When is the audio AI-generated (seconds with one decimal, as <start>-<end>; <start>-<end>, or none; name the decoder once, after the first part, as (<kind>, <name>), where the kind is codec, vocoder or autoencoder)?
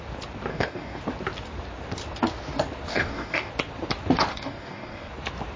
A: 0.5-1.0 (codec, DAC); 2.9-3.5; 4.3-5.1